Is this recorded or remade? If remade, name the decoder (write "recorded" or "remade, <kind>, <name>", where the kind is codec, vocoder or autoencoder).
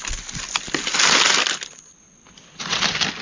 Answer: recorded